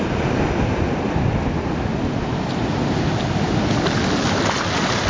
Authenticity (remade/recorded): recorded